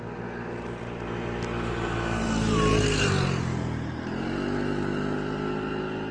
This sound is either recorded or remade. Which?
recorded